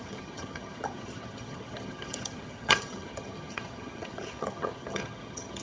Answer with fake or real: fake